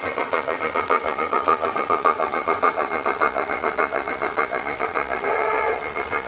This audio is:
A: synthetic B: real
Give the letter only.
A